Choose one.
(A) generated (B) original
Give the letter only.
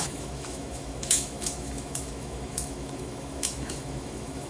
A